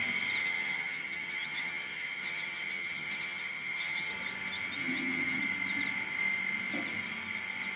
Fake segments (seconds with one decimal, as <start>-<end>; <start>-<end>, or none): 0.4-4.1; 4.8-5.4